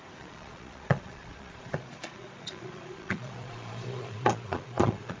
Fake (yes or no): yes